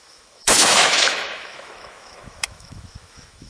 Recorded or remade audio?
remade